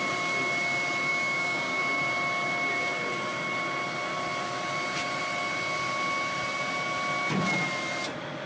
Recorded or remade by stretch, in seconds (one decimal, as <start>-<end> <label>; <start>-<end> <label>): 0.0-1.1 recorded; 1.1-1.8 remade; 1.8-8.5 recorded